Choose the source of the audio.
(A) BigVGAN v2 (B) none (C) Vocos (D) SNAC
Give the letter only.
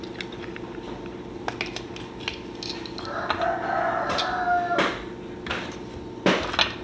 B